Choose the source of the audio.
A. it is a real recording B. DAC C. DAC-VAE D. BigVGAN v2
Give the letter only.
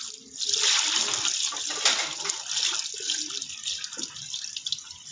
A